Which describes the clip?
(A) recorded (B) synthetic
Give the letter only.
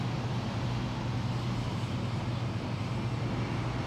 A